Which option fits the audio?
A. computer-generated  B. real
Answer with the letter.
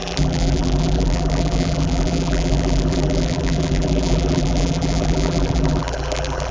A